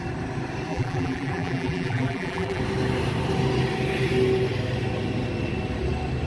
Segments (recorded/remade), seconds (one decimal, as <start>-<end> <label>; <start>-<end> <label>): 0.0-0.7 recorded; 0.7-2.6 remade; 2.6-6.3 recorded